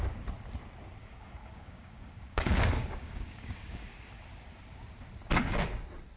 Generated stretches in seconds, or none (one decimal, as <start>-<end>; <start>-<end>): 1.0-4.1